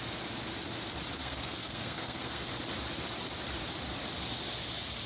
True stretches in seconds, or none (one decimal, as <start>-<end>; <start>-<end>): 0.0-1.2; 2.5-5.1